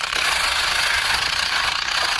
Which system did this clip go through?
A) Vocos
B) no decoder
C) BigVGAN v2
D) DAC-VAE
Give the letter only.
A